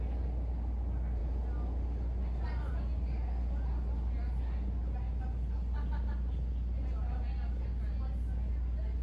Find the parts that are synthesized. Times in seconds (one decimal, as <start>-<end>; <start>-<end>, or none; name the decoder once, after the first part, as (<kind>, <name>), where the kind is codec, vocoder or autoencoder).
none